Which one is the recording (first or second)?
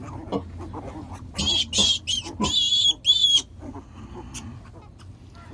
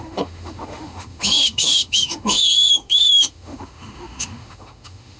first